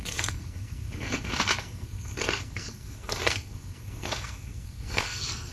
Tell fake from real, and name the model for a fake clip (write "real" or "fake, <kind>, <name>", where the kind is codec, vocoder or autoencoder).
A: fake, codec, SNAC